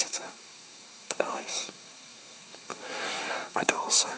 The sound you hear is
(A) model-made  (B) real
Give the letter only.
A